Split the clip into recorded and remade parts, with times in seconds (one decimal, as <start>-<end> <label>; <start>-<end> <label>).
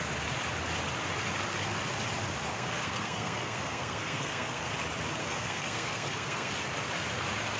0.0-2.5 recorded; 2.5-4.7 remade; 4.7-5.2 recorded; 5.2-6.5 remade; 6.5-7.6 recorded